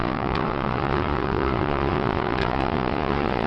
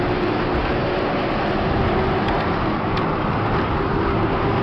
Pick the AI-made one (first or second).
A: first